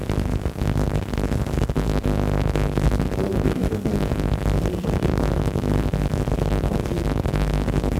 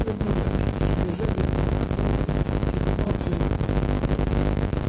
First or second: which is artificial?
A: first